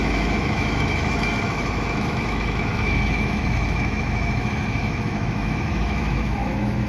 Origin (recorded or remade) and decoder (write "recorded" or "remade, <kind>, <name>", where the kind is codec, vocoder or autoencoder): remade, autoencoder, DAC-VAE